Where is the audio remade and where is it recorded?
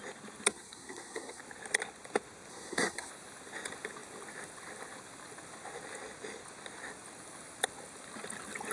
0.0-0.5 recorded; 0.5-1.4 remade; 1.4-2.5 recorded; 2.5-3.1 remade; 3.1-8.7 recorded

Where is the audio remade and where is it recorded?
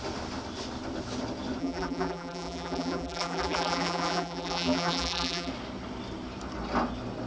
0.0-1.6 recorded; 1.6-5.5 remade; 5.5-7.3 recorded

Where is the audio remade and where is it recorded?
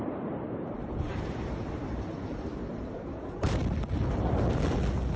0.0-3.6 remade; 3.6-5.2 recorded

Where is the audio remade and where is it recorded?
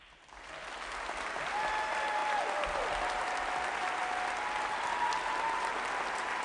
0.0-6.4 recorded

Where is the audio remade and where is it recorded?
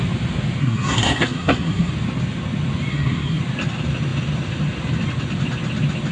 0.0-0.6 recorded; 0.6-1.9 remade; 1.9-2.9 recorded; 2.9-3.4 remade; 3.4-6.1 recorded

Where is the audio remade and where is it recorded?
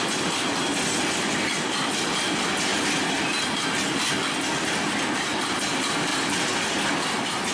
0.0-7.5 recorded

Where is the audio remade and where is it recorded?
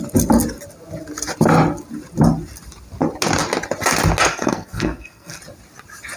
0.0-4.3 recorded; 4.3-5.4 remade; 5.4-6.2 recorded